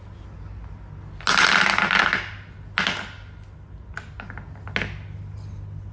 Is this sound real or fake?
real